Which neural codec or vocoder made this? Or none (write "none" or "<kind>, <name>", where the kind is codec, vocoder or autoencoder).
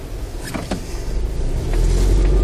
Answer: none